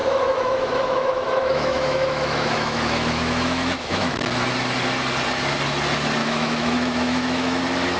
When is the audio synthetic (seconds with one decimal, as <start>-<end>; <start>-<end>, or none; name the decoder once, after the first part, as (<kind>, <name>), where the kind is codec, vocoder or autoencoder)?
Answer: 0.0-4.2 (autoencoder, DAC-VAE); 6.2-7.6